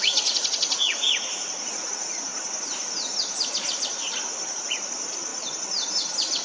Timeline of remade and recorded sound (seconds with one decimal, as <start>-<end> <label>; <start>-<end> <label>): 0.0-2.3 remade; 2.3-4.6 recorded; 4.6-5.3 remade; 5.3-6.4 recorded